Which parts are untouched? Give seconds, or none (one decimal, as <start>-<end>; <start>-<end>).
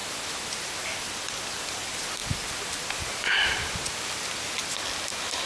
0.0-5.5